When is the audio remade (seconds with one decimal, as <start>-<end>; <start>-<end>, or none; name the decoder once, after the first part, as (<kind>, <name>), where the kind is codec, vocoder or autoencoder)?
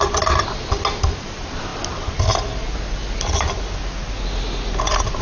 none